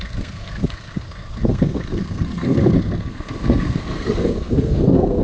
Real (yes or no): no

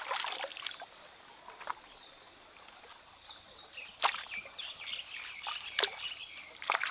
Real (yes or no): yes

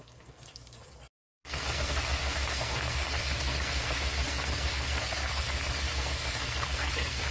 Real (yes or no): no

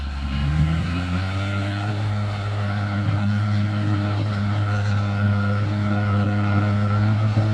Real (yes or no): no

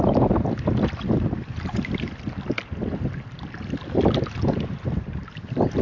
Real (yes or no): yes